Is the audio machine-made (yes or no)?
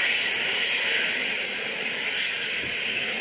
no